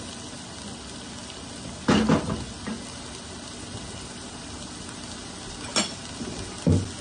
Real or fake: real